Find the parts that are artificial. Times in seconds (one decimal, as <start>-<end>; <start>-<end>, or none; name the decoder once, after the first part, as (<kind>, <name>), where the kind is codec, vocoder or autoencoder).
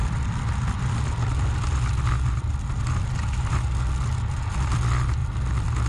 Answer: none